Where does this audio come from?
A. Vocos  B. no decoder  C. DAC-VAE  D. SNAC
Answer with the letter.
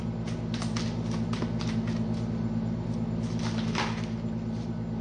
B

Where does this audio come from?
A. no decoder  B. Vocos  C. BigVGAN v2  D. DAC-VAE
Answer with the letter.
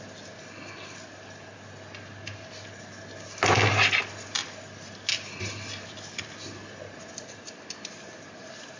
A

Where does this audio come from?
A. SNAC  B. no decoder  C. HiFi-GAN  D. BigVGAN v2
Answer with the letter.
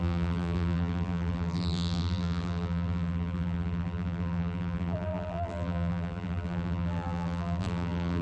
D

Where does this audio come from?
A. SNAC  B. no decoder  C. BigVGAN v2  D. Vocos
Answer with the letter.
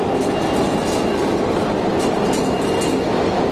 B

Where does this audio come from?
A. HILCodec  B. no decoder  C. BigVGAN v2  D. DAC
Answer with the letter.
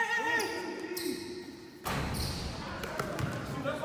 B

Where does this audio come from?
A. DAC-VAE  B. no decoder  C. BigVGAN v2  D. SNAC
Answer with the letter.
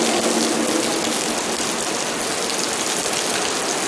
B